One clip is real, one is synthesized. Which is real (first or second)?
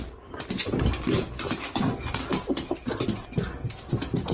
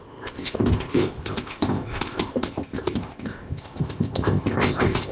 first